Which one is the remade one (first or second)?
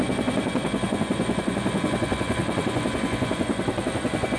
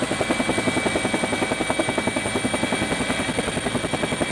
first